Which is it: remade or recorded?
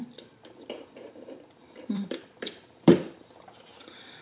remade